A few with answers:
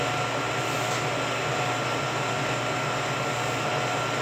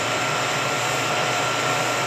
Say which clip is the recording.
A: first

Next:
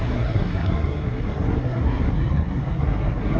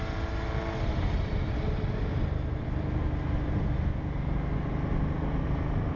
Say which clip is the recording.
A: second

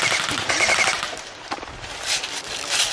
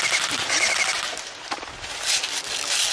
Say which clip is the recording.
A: second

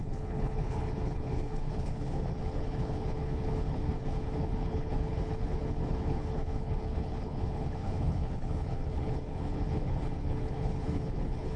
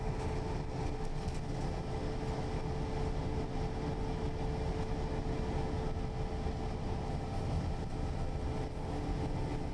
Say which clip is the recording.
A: second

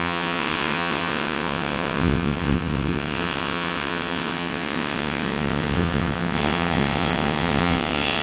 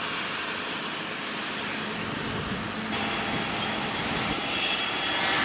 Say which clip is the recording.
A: second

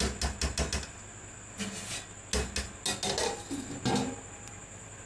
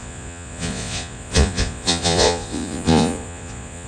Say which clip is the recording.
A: first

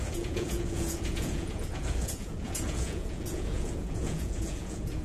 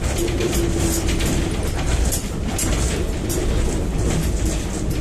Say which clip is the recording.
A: second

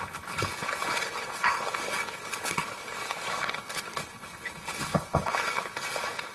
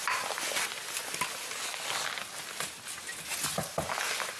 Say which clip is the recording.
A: second